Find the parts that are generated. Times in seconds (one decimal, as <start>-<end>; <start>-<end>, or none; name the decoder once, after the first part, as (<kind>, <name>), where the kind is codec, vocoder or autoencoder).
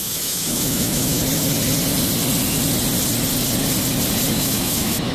0.0-1.2 (autoencoder, DAC-VAE); 4.3-5.1